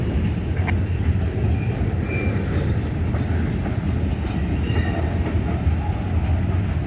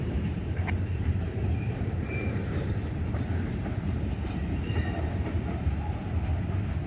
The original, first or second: first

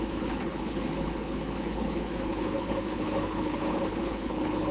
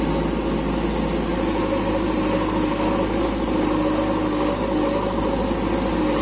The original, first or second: second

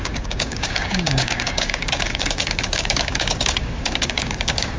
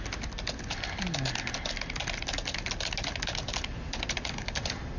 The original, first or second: second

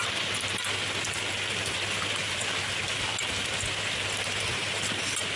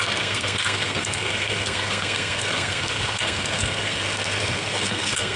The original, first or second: first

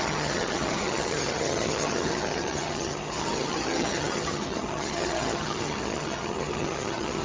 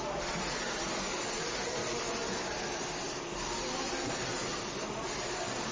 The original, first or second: second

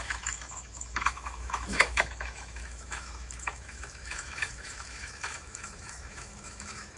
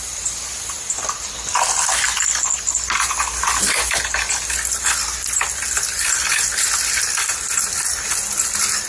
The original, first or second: second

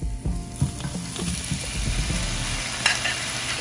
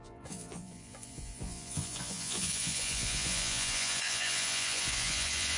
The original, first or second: first